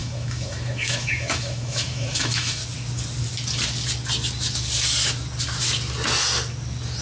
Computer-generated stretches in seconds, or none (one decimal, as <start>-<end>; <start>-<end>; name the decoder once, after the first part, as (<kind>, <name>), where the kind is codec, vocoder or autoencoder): 0.0-2.6 (autoencoder, DAC-VAE)